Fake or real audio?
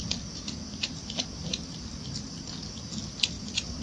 real